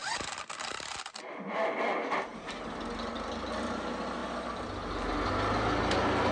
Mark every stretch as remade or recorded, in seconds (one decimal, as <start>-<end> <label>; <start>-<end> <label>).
0.0-6.3 recorded